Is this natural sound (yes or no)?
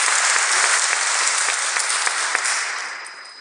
yes